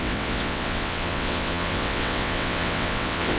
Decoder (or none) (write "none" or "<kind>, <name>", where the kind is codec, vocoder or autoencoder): vocoder, WaveNeXt